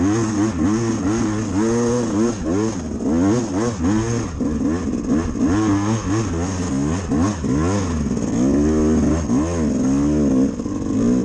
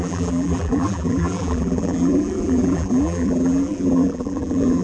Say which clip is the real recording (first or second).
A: first